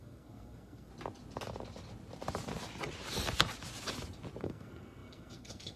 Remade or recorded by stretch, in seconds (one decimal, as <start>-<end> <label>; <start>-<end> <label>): 0.0-0.9 remade; 0.9-4.4 recorded; 4.4-5.8 remade

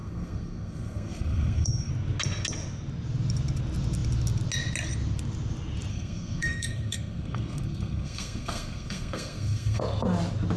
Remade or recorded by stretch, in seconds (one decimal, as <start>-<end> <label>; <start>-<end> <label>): 0.0-1.9 remade; 1.9-5.9 recorded; 5.9-9.8 remade; 9.8-10.6 recorded

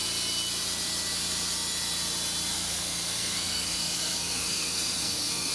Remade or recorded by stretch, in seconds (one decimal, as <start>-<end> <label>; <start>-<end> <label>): 0.0-2.5 recorded; 2.5-5.5 remade

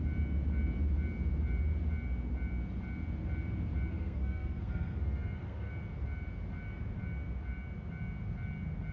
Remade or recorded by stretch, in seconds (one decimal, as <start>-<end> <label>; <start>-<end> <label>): 0.0-3.9 recorded; 3.9-5.7 remade; 5.7-8.9 recorded

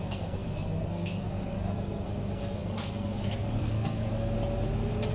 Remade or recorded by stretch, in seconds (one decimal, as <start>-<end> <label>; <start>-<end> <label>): 0.0-4.1 remade; 4.1-5.1 recorded

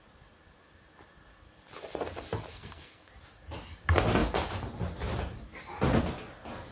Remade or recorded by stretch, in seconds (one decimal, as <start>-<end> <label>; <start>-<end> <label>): 0.0-2.5 recorded; 2.5-3.1 remade; 3.1-6.7 recorded